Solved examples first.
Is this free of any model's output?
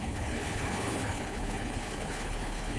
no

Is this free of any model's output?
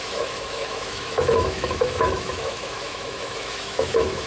no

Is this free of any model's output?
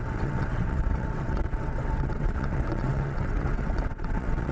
no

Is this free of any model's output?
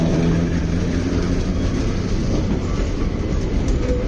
yes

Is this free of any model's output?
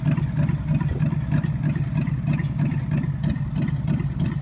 yes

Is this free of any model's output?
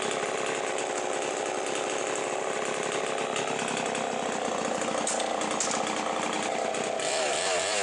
yes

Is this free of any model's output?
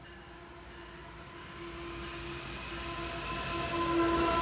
yes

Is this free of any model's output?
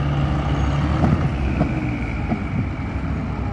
yes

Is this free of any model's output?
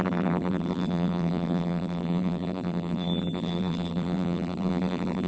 no